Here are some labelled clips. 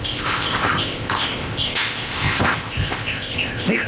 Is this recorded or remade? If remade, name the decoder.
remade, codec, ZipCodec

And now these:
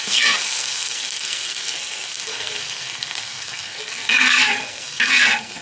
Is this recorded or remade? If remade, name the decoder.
remade, codec, SNAC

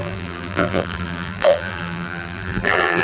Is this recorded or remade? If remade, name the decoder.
remade, vocoder, BigVGAN v2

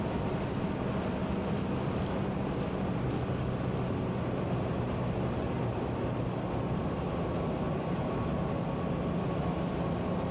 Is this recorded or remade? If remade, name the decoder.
recorded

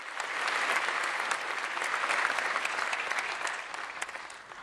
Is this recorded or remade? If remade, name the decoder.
recorded